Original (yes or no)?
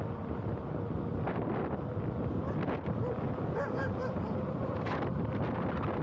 yes